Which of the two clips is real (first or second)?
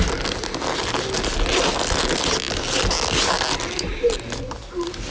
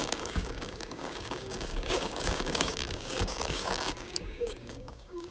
first